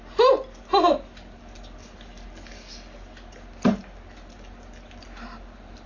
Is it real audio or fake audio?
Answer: real